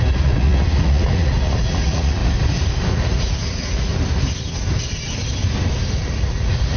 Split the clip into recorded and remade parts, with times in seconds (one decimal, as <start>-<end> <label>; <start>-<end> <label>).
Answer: 0.0-2.2 remade; 2.2-2.9 recorded; 2.9-3.9 remade; 3.9-6.0 recorded; 6.0-6.8 remade